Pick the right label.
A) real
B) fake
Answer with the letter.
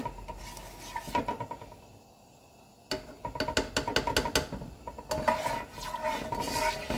A